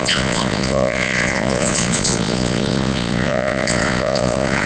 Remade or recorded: remade